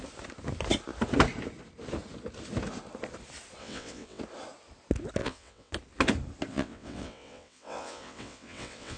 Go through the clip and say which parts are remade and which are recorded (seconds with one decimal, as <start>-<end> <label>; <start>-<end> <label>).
0.0-3.6 recorded; 3.6-4.2 remade; 4.2-5.2 recorded; 5.2-5.7 remade; 5.7-6.5 recorded; 6.5-9.0 remade